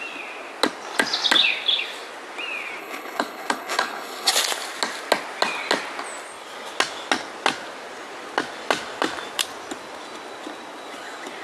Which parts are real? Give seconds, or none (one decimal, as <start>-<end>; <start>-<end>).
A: 0.0-2.8; 4.3-11.4